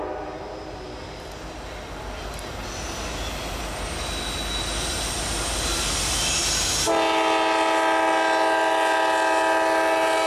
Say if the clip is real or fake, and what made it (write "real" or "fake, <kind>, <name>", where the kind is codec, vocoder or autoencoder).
real